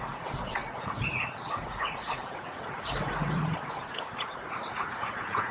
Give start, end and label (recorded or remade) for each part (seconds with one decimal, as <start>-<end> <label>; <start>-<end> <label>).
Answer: 0.0-5.5 remade